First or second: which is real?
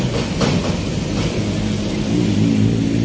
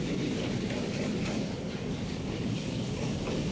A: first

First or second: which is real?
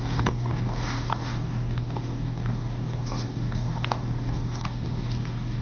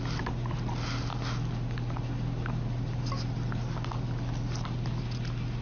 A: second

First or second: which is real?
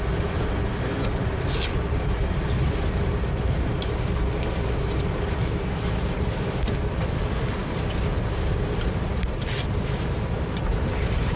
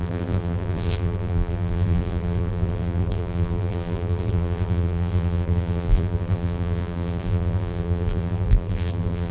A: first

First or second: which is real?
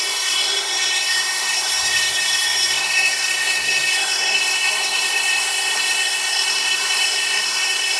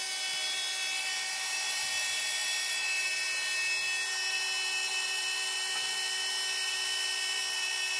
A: second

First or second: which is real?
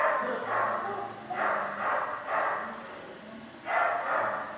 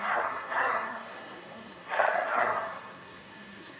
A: first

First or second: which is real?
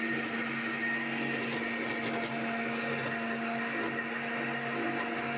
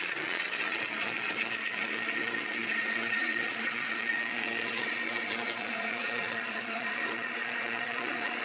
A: first